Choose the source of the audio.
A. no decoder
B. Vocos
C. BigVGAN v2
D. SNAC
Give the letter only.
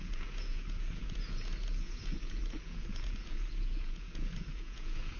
B